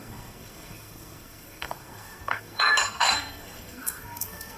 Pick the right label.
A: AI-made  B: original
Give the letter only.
A